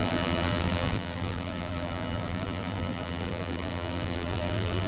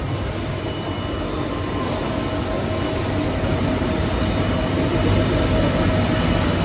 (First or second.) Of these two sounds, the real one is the second